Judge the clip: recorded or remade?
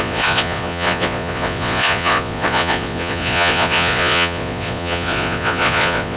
remade